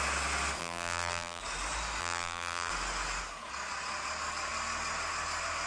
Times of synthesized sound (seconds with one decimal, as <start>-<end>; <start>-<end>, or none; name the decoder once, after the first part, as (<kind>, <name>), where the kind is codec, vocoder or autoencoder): 0.6-1.4 (vocoder, BigVGAN v2); 2.0-2.7